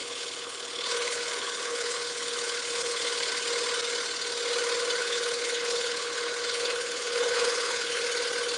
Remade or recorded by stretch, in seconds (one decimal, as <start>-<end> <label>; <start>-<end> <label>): 0.0-3.3 remade; 3.3-5.0 recorded; 5.0-8.0 remade; 8.0-8.6 recorded